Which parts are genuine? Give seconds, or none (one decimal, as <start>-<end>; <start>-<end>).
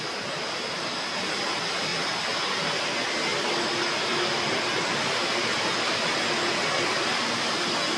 0.0-8.0